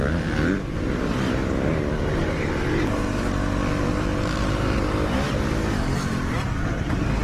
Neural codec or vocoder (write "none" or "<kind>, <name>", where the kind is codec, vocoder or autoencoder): none